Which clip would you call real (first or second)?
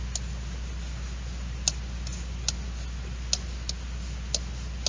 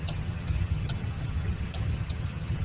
first